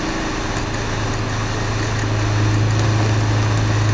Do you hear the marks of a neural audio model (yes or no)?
no